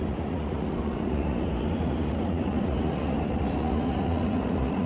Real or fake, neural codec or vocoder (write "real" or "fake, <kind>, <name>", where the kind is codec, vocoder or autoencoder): fake, vocoder, Vocos